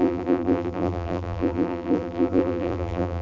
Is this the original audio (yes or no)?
no